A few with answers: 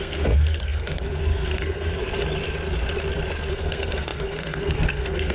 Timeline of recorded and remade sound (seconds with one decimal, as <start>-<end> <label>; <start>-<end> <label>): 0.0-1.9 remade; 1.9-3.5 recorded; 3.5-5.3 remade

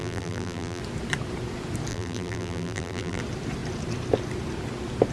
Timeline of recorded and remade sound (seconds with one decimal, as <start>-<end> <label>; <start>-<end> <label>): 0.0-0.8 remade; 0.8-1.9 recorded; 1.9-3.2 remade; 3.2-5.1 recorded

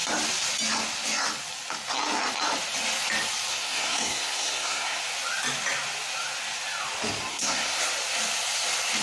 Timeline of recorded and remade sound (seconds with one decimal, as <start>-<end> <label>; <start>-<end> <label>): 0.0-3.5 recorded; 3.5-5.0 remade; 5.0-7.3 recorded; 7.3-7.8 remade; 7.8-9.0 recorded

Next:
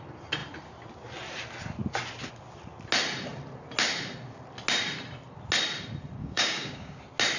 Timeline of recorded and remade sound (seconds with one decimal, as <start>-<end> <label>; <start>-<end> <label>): 0.0-6.2 recorded; 6.2-7.0 remade; 7.0-7.4 recorded

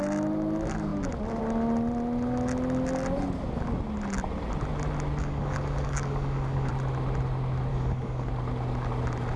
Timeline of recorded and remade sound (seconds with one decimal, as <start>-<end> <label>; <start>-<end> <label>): 0.0-5.2 recorded; 5.2-6.7 remade; 6.7-7.7 recorded; 7.7-8.3 remade; 8.3-9.4 recorded

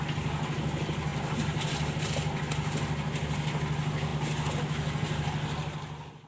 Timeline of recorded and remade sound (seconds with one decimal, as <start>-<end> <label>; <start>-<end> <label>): 0.0-6.3 recorded

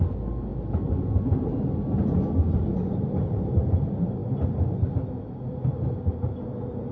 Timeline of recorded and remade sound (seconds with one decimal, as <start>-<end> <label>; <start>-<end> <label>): 0.0-6.9 recorded